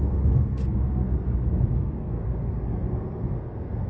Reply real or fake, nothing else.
fake